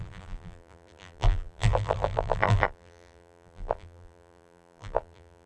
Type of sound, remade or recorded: remade